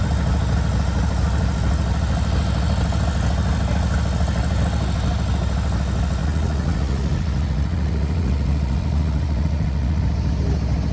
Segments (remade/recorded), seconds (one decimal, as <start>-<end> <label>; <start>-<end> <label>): 0.0-6.2 recorded; 6.2-10.0 remade; 10.0-10.9 recorded